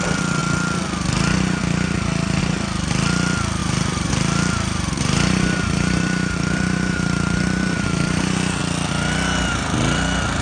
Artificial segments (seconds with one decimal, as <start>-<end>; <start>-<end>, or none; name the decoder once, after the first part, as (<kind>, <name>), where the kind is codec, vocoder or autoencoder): 3.6-8.6 (vocoder, BigVGAN v2)

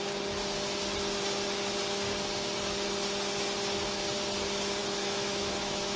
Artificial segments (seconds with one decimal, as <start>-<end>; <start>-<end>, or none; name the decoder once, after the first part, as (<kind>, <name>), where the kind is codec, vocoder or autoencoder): 4.8-6.0 (autoencoder, DAC-VAE)